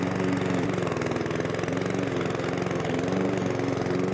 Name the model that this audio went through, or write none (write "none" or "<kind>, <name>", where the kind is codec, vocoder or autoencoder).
none